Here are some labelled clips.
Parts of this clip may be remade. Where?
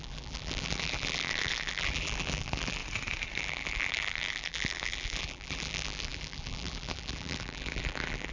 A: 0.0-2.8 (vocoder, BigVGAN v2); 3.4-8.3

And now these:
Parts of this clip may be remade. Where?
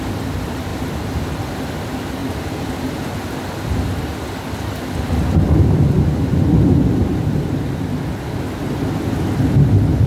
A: none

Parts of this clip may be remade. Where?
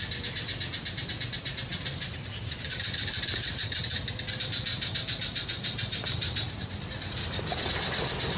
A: 1.7-3.9 (vocoder, BigVGAN v2); 4.7-6.7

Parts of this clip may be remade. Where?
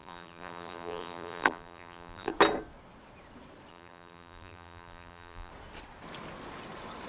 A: 0.0-2.3 (vocoder, BigVGAN v2); 3.7-5.5